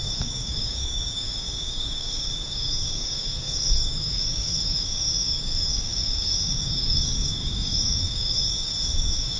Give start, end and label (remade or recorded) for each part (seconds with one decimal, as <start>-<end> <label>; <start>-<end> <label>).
0.0-9.4 remade